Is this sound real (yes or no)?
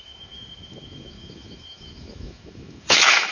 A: no